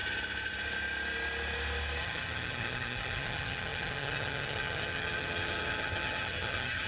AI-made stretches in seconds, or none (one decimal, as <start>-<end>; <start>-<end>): 2.0-6.9